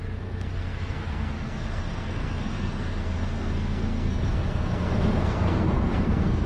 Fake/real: fake